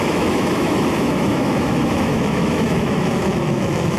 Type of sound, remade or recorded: remade